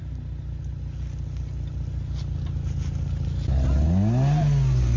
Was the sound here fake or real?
real